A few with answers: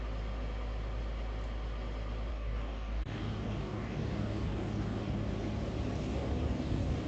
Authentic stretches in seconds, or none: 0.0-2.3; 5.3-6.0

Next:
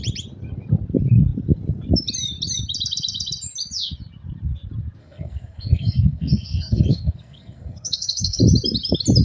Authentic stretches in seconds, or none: 0.0-5.0; 8.4-9.2